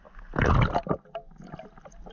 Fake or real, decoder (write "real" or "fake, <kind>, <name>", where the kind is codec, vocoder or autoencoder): real